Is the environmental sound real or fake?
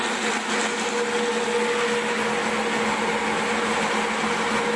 real